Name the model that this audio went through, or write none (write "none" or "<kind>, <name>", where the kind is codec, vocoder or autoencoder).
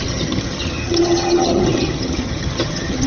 vocoder, HiFi-GAN